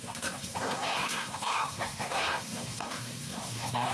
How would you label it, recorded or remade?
remade